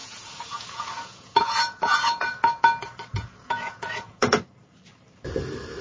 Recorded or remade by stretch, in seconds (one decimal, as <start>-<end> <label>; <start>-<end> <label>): 0.0-2.5 remade; 2.5-3.1 recorded; 3.1-4.4 remade; 4.4-5.8 recorded